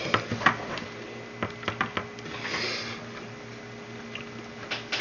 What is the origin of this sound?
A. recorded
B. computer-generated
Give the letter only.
A